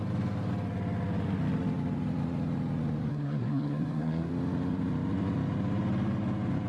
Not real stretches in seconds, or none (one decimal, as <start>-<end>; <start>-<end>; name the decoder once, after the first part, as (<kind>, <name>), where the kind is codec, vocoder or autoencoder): 3.1-4.3 (codec, SNAC)